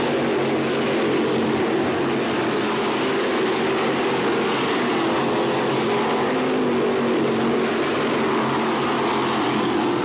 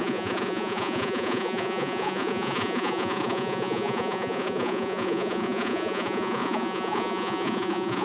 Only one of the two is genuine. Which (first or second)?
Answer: first